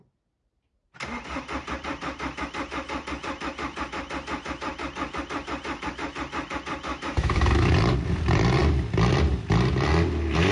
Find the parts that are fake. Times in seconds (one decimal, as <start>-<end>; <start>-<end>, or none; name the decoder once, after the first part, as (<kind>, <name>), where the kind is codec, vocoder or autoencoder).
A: 6.9-7.7 (autoencoder, DAC-VAE)